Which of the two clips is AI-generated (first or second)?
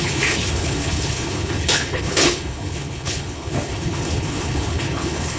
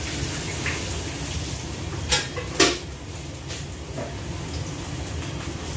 first